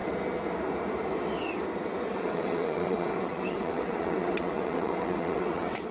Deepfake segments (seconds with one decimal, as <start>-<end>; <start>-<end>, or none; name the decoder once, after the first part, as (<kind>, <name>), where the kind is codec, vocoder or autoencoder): 2.1-5.9 (vocoder, WaveNeXt)